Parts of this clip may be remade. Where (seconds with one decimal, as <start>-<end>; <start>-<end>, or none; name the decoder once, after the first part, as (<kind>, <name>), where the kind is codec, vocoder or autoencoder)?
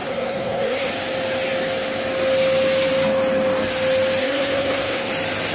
0.0-0.9 (codec, SNAC); 4.2-5.1